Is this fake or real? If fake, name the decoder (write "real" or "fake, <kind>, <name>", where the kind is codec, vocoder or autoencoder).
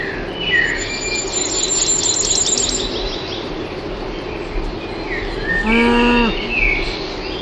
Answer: real